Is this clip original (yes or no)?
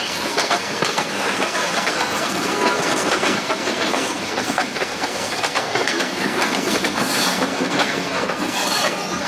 no